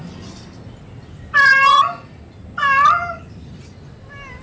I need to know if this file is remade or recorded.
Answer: recorded